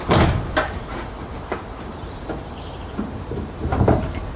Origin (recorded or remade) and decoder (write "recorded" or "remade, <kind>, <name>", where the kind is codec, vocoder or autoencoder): remade, vocoder, BigVGAN v2